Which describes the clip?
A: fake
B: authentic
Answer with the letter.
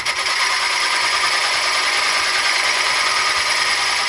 A